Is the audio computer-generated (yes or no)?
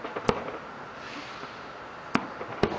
no